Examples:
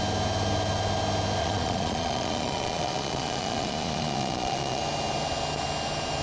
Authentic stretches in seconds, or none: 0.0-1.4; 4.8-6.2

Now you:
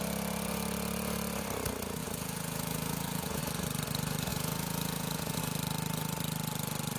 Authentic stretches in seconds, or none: 0.0-2.0; 3.4-4.3; 5.4-7.0